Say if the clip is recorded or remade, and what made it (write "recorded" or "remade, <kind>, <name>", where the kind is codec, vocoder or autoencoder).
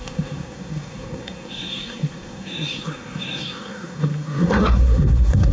remade, codec, SNAC